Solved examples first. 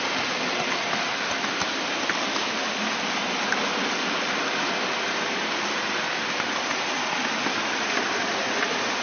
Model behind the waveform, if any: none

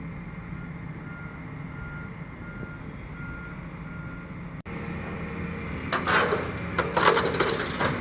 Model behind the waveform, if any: none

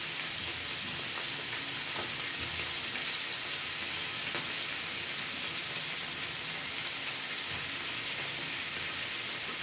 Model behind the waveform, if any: none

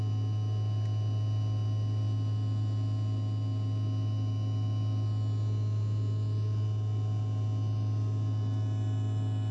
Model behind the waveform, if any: none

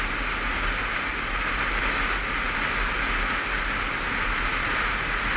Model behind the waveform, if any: none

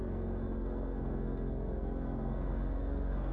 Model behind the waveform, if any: codec, SNAC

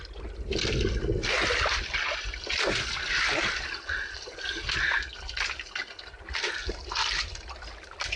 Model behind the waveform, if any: none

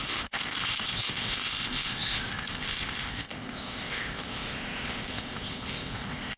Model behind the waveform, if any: codec, ZipCodec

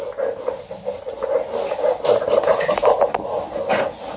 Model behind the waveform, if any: none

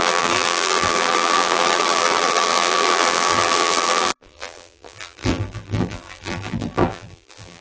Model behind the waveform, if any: vocoder, BigVGAN v2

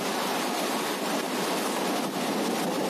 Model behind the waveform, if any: none